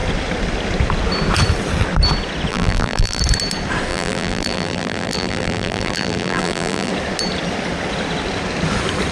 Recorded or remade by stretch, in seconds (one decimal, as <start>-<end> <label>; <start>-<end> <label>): 0.0-2.5 recorded; 2.5-3.2 remade; 3.2-3.9 recorded; 3.9-6.9 remade; 6.9-9.1 recorded